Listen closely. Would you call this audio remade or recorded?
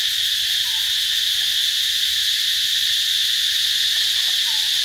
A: recorded